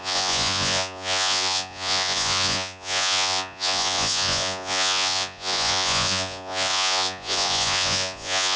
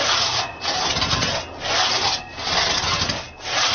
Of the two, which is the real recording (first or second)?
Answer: second